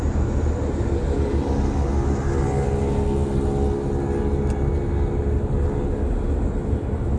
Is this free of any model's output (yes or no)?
yes